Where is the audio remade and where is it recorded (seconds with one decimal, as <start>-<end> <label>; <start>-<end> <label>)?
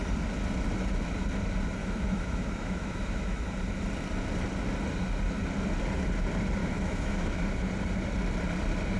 0.0-1.8 recorded; 1.8-3.4 remade; 3.4-6.6 recorded; 6.6-7.4 remade; 7.4-9.0 recorded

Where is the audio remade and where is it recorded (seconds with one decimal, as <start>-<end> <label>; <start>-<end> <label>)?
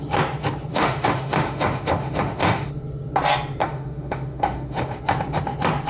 0.0-0.7 recorded; 0.7-2.7 remade; 2.7-3.6 recorded; 3.6-5.0 remade; 5.0-5.9 recorded